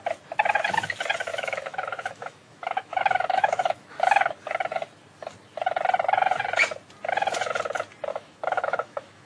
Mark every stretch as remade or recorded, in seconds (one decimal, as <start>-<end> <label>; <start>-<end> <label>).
0.0-1.3 recorded; 1.3-4.0 remade; 4.0-8.1 recorded; 8.1-9.3 remade